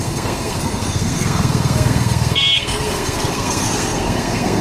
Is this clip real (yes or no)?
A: no